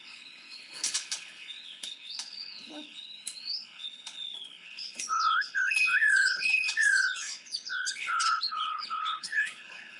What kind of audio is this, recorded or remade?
remade